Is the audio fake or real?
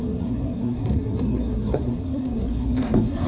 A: fake